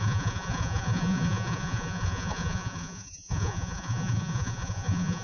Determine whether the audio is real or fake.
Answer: fake